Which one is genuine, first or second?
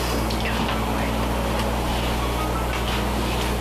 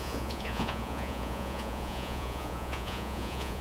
first